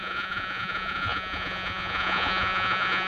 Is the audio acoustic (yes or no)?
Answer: no